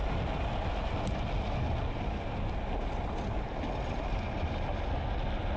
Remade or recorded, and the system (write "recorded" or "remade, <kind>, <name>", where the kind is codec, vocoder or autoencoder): recorded